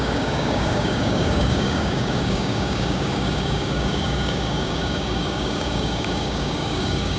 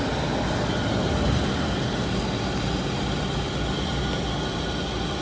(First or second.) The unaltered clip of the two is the second